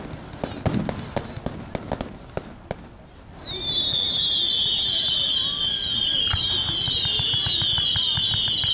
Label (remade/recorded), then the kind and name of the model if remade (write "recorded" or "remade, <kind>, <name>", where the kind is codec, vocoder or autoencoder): recorded